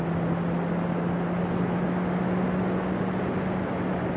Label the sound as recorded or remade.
recorded